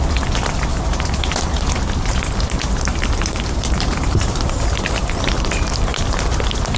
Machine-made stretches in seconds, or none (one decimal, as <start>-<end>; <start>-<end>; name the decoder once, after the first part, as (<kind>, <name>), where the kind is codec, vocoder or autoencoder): 0.7-1.3 (vocoder, BigVGAN v2); 2.9-5.5